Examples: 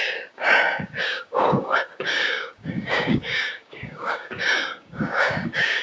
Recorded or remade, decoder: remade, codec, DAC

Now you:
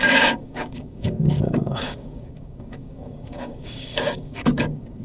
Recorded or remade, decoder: remade, codec, DAC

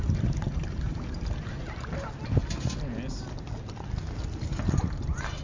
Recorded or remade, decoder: recorded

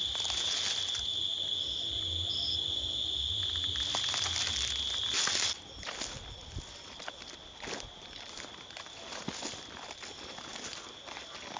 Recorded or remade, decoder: recorded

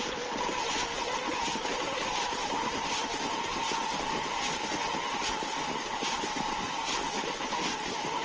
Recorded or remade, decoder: recorded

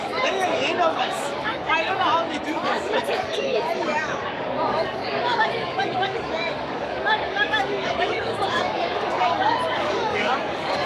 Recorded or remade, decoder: remade, codec, DAC